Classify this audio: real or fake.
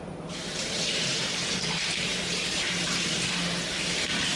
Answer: fake